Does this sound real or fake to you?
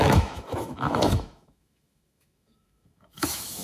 fake